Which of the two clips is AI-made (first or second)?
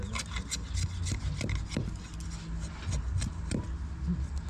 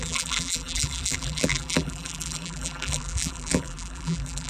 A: second